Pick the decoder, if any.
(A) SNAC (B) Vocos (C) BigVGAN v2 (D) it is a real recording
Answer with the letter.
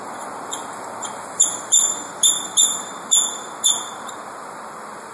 C